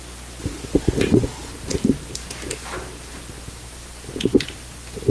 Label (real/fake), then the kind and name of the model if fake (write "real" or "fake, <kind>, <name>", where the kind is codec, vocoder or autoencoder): real